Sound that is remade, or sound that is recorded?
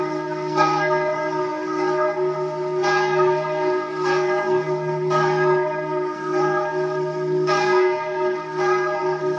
remade